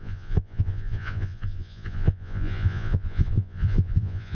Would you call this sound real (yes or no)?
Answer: no